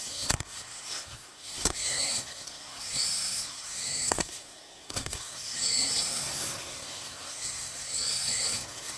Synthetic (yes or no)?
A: yes